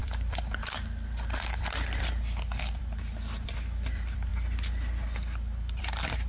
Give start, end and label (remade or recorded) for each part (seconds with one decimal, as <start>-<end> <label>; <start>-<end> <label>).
0.0-4.3 remade; 4.3-5.8 recorded; 5.8-6.3 remade